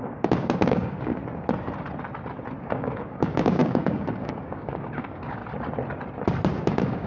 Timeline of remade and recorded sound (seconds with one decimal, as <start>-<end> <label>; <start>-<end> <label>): 0.0-1.2 remade; 1.2-2.6 recorded; 2.6-5.4 remade; 5.4-6.5 recorded; 6.5-7.1 remade